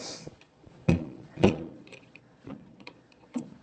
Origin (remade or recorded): remade